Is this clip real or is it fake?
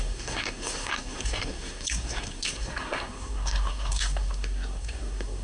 fake